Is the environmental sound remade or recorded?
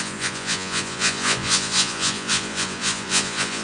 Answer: remade